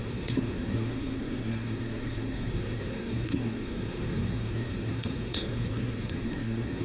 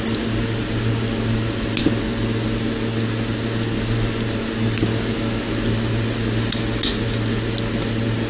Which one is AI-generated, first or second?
first